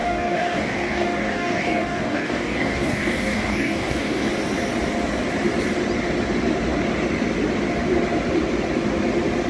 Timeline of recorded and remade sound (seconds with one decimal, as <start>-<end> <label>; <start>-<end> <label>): 0.0-4.3 remade; 4.3-9.5 recorded